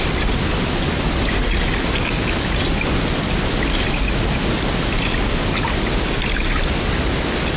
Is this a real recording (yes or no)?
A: yes